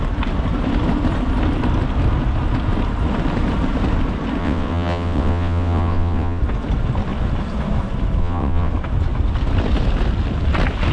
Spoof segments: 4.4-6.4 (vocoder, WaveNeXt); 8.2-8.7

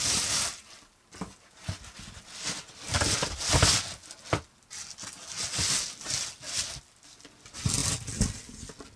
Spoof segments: none

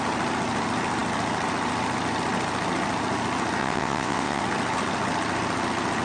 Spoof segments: 3.6-4.4 (vocoder, WaveNeXt)

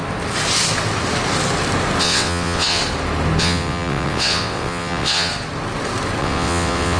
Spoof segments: 2.0-2.8 (vocoder, WaveNeXt); 3.4-5.3; 6.2-7.0

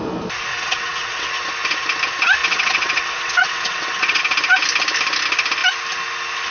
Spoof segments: 0.5-1.3 (vocoder, WaveNeXt); 2.4-4.2